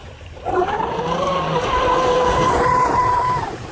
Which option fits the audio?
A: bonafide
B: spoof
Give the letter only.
B